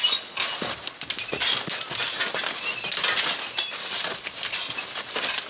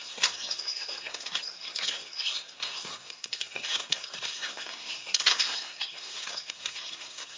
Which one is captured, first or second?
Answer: first